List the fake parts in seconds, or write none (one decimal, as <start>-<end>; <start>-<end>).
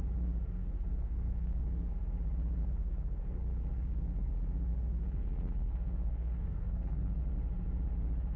0.6-1.6; 2.6-4.3; 4.7-7.2